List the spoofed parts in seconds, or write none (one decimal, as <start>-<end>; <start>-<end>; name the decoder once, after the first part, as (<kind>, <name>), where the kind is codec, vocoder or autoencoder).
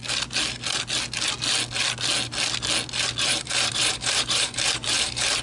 3.2-5.4 (vocoder, BigVGAN v2)